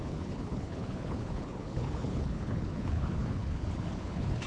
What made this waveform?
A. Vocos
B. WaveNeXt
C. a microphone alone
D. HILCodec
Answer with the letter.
D